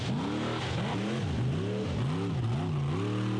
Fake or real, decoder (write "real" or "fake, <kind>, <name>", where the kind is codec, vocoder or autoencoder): real